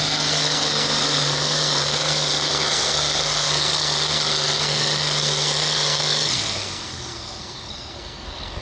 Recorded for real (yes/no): no